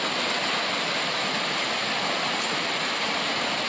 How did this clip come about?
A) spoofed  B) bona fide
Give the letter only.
B